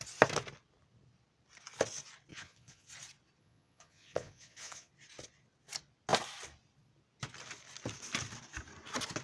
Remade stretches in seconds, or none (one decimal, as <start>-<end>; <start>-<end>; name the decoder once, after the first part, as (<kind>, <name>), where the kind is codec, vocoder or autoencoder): 2.3-2.9 (vocoder, Vocos); 3.4-4.9